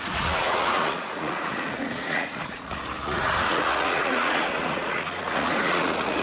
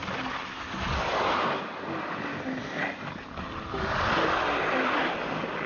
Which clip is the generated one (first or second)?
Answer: first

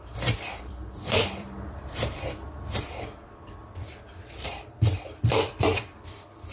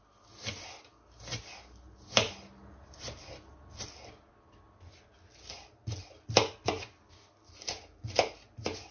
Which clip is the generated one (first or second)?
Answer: first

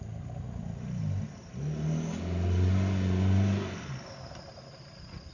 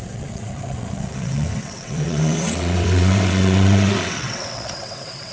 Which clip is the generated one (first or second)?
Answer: second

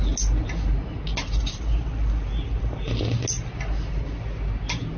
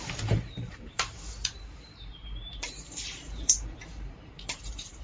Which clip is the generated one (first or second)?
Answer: second